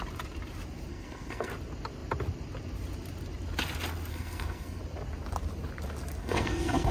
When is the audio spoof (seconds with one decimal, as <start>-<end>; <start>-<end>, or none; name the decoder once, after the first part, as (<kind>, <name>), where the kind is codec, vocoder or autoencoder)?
0.9-1.5 (codec, SNAC); 4.1-4.8; 6.2-6.9